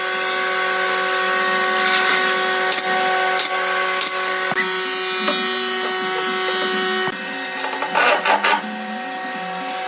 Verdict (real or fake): real